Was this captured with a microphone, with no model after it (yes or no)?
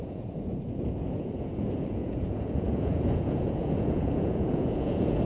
no